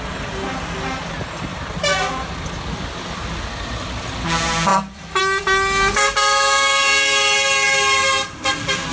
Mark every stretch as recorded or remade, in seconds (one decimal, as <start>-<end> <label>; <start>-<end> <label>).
0.0-1.5 recorded; 1.5-2.6 remade; 2.6-4.7 recorded; 4.7-5.2 remade; 5.2-8.9 recorded